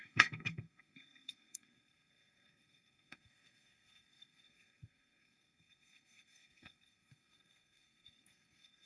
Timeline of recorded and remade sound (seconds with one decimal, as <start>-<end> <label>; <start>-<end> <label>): 0.0-8.9 remade